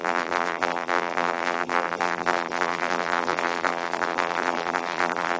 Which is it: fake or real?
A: fake